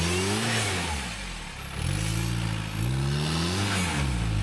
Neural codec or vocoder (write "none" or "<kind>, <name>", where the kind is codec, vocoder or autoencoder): none